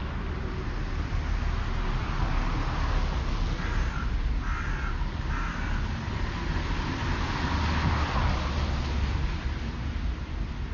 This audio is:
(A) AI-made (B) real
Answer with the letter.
B